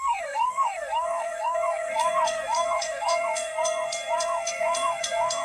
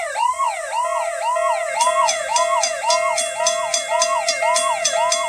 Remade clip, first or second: first